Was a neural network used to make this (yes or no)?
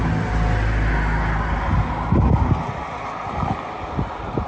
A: no